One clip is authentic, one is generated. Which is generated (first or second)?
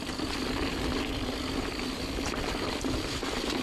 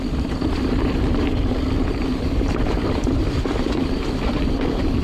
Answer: second